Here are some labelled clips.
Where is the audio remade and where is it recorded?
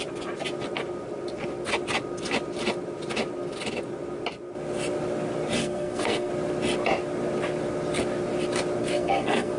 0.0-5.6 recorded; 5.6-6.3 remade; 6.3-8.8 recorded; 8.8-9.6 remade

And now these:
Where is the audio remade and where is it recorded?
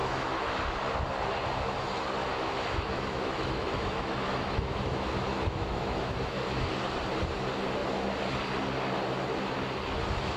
0.0-0.5 remade; 0.5-2.2 recorded; 2.2-6.7 remade; 6.7-10.4 recorded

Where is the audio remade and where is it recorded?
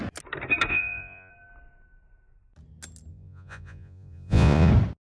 0.0-0.7 recorded; 0.7-1.3 remade; 1.3-3.1 recorded; 3.1-4.7 remade; 4.7-5.2 recorded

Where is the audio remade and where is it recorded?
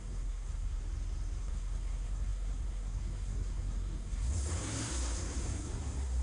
0.0-0.8 remade; 0.8-1.4 recorded; 1.4-6.2 remade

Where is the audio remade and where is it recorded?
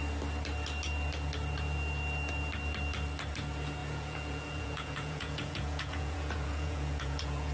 0.0-3.8 recorded; 3.8-7.5 remade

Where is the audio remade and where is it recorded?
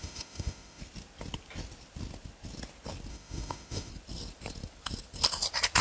0.0-0.8 remade; 0.8-3.1 recorded; 3.1-3.9 remade; 3.9-5.8 recorded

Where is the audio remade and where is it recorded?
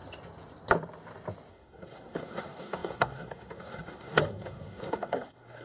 0.0-1.5 recorded; 1.5-5.6 remade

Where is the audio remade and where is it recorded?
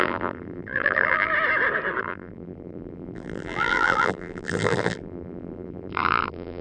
0.0-1.3 remade; 1.3-2.0 recorded; 2.0-6.6 remade